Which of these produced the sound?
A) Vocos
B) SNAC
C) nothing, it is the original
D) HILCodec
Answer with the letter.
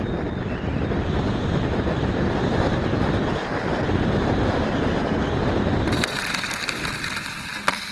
C